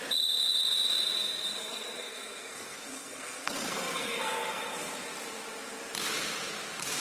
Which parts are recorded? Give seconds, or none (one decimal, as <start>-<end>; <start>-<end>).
0.0-1.6; 4.9-7.0